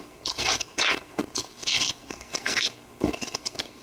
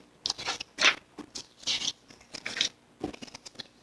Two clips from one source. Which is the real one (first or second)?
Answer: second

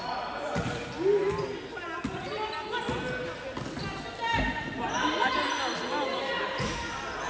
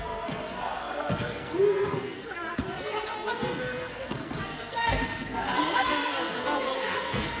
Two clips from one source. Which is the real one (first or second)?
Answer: first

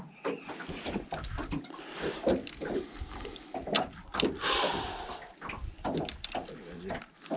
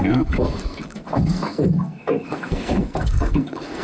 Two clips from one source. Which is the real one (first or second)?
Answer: first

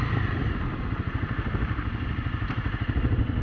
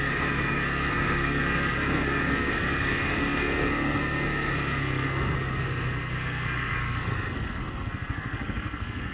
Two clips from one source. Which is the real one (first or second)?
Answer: first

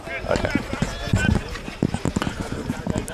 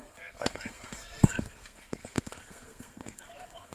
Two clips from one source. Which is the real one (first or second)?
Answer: first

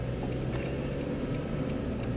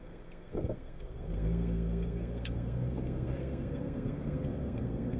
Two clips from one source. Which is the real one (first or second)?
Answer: first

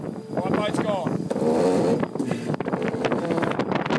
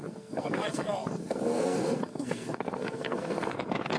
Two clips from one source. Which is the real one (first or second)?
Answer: first